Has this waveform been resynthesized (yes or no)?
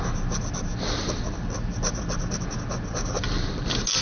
no